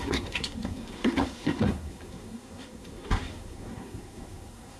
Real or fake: fake